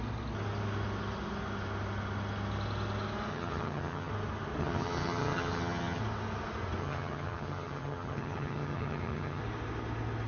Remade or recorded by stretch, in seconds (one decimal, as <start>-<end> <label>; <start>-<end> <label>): 0.0-3.3 recorded; 3.3-4.1 remade; 4.1-4.6 recorded; 4.6-6.0 remade; 6.0-6.8 recorded; 6.8-9.4 remade; 9.4-10.3 recorded